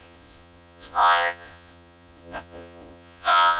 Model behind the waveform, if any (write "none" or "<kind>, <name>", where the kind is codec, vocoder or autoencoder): vocoder, Vocos